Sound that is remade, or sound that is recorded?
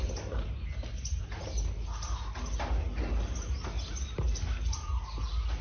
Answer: recorded